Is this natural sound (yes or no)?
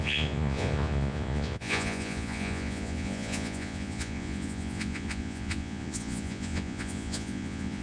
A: no